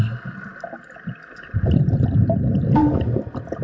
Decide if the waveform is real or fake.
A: real